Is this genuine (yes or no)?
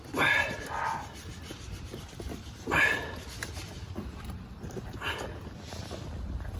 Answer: yes